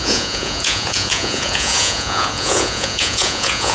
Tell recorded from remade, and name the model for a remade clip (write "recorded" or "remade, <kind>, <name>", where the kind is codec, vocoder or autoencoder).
remade, vocoder, Vocos